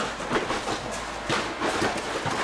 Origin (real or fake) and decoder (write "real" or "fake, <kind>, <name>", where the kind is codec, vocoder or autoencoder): real